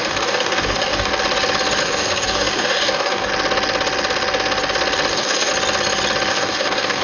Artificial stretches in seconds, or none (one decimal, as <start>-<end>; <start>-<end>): 0.0-1.1; 1.8-3.3; 5.1-5.5; 6.3-7.0